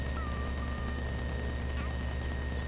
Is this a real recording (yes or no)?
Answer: yes